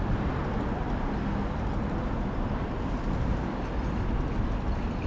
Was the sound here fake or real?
real